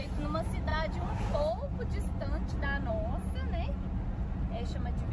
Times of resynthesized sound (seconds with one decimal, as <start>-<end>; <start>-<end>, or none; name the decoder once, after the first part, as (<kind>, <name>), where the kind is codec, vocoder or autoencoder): none